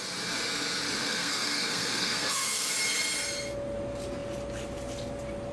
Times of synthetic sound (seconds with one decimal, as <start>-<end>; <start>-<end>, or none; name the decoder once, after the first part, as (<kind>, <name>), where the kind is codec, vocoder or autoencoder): 1.0-2.7 (codec, SNAC)